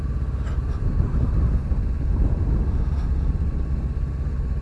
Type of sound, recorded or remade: recorded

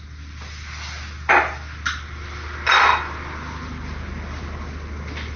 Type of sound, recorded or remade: recorded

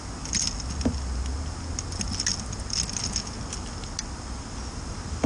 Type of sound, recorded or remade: recorded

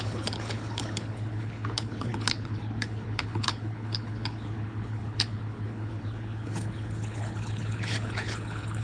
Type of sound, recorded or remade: remade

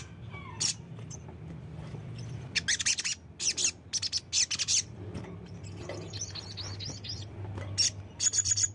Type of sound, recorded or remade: recorded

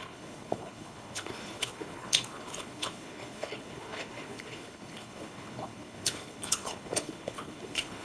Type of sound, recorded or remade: remade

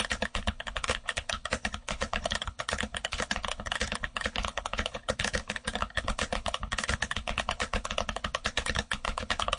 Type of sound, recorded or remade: remade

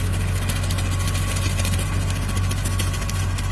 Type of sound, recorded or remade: recorded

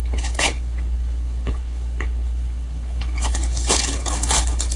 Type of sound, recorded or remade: remade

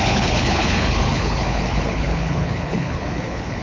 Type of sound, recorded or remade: remade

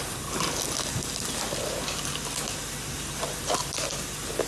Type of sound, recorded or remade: recorded